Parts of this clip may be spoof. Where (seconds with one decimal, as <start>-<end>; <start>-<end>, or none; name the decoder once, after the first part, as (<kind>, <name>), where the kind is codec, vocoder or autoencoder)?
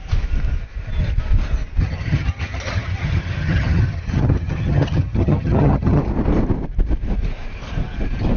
1.8-6.0 (vocoder, HiFi-GAN)